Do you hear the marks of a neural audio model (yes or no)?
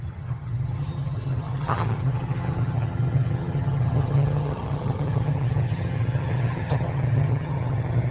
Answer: yes